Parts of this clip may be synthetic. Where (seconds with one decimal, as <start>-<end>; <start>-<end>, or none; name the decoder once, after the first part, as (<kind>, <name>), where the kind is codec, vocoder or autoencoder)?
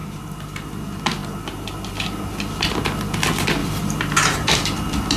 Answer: 0.0-0.7 (vocoder, BigVGAN v2); 3.6-5.2